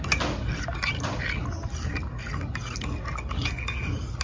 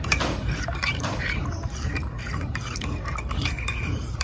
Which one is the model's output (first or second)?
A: second